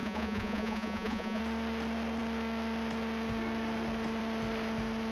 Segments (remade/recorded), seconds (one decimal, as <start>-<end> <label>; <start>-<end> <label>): 0.0-1.4 remade; 1.4-5.1 recorded